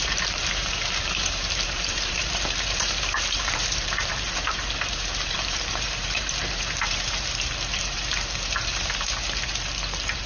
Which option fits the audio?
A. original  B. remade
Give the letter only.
B